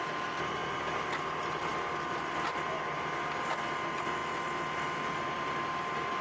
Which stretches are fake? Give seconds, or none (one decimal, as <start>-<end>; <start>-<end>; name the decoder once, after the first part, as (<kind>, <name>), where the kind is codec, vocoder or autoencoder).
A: none